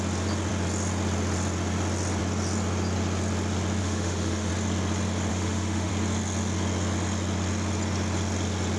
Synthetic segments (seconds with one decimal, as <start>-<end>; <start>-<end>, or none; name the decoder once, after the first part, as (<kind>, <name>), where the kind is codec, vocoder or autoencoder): 3.8-4.5 (autoencoder, DAC-VAE); 5.3-5.9